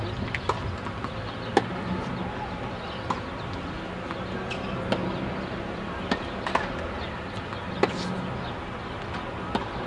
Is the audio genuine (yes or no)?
yes